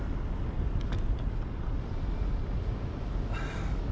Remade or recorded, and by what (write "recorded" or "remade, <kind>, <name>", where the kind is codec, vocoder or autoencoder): recorded